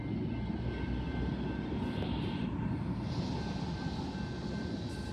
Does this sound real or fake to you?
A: real